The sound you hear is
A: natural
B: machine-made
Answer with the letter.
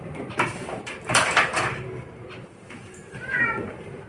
B